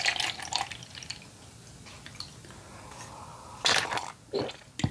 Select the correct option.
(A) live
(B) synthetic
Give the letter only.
A